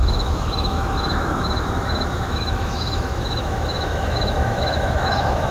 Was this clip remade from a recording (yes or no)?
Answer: yes